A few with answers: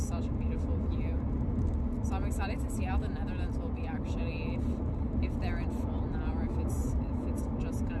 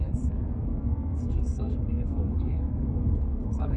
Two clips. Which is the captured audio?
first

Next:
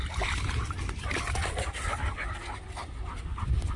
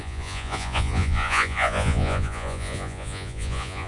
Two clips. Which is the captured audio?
first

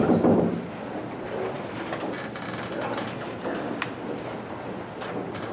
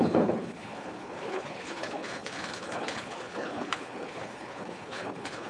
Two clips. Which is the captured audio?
first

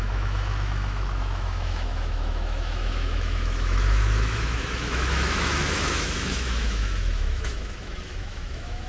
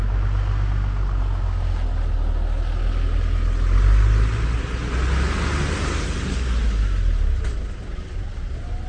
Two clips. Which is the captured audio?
second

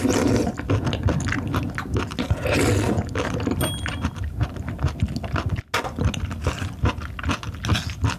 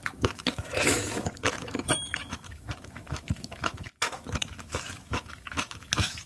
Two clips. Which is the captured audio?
first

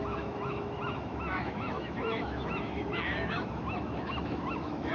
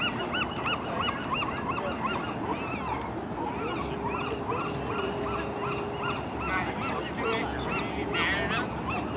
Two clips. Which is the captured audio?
second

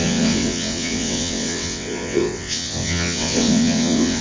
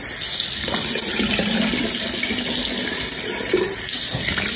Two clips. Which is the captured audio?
second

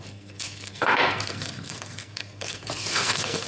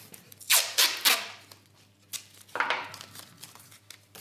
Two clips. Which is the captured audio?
second